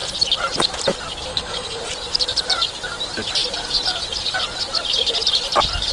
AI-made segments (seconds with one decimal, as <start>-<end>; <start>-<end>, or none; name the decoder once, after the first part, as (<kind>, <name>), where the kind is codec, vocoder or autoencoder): 1.3-1.8 (codec, HILCodec)